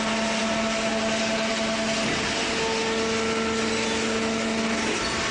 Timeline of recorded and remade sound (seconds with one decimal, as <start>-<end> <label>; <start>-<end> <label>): 0.0-5.3 recorded